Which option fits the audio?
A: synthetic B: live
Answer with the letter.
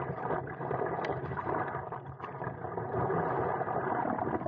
A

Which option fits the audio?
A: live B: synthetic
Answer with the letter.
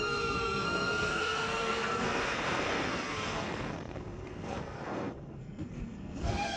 B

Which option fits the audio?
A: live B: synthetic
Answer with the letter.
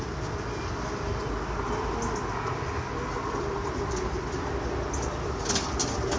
A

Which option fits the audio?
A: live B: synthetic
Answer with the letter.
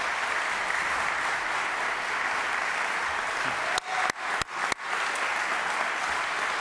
A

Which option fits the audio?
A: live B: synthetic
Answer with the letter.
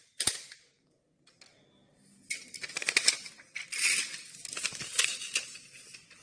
A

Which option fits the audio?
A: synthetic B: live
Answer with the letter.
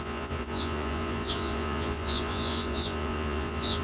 A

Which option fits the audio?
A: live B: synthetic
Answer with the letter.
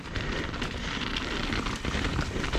B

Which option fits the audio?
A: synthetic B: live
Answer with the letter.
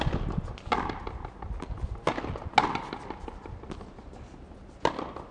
B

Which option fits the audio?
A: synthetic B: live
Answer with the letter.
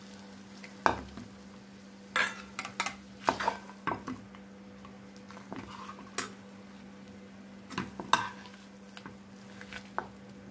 B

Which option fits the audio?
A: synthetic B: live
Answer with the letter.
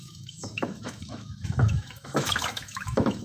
A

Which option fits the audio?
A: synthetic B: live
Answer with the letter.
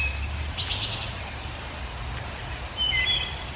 B